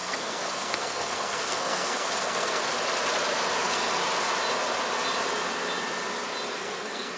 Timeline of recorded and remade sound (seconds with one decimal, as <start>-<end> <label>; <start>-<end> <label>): 0.0-2.6 remade; 2.6-3.6 recorded; 3.6-4.0 remade; 4.0-6.5 recorded; 6.5-7.2 remade

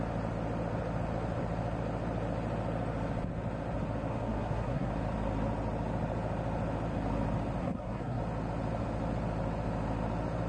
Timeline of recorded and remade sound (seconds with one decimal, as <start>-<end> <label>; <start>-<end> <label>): 0.0-4.1 recorded; 4.1-4.9 remade; 4.9-7.6 recorded; 7.6-8.2 remade; 8.2-10.5 recorded

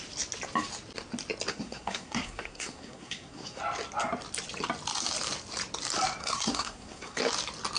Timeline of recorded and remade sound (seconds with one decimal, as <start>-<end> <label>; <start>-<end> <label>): 0.0-1.5 recorded; 1.5-3.6 remade; 3.6-6.2 recorded; 6.2-7.2 remade; 7.2-7.8 recorded

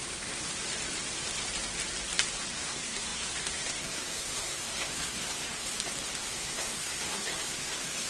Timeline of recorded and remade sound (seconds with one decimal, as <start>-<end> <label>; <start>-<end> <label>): 0.0-2.5 recorded; 2.5-5.7 remade; 5.7-6.3 recorded; 6.3-8.1 remade

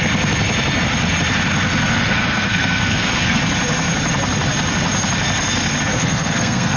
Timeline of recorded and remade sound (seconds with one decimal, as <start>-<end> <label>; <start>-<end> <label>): 0.0-1.9 recorded; 1.9-3.4 remade; 3.4-5.9 recorded; 5.9-6.8 remade